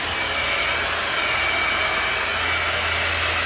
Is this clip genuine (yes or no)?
yes